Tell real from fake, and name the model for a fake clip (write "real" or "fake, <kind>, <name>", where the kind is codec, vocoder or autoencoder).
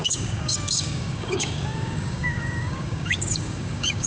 fake, codec, DAC